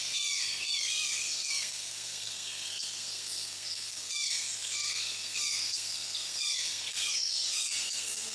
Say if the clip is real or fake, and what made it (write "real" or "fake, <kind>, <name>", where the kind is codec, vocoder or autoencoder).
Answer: fake, codec, SNAC